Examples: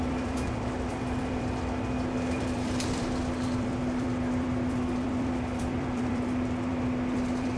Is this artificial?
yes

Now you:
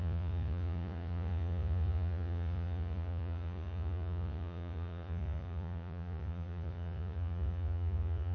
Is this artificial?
yes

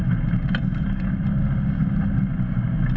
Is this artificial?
no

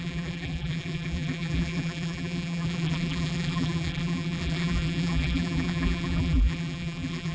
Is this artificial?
yes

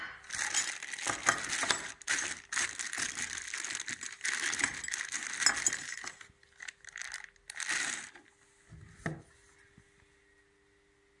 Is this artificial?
no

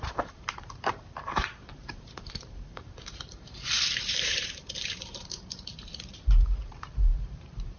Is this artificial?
yes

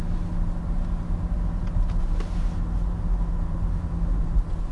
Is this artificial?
no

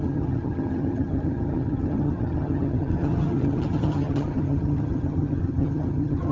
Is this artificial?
yes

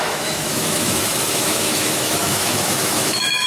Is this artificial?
yes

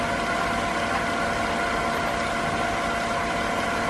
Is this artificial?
no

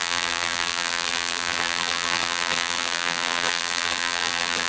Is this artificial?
yes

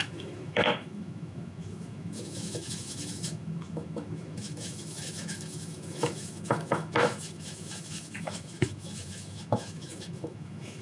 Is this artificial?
yes